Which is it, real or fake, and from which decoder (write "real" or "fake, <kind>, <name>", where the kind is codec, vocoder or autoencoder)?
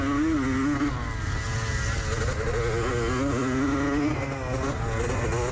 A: real